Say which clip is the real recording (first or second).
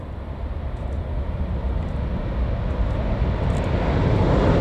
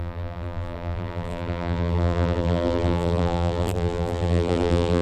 first